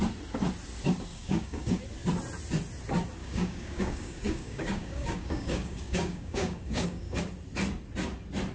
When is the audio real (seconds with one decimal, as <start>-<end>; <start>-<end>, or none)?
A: 0.0-1.1; 1.8-3.2; 7.2-8.5